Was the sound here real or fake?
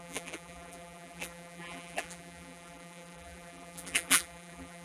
fake